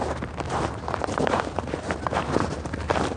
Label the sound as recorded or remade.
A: recorded